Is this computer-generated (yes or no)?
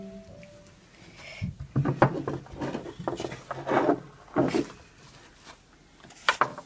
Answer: no